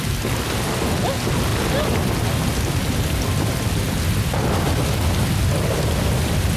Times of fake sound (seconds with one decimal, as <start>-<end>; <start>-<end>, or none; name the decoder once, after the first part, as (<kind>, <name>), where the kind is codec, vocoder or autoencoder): none